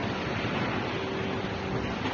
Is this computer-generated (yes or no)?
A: no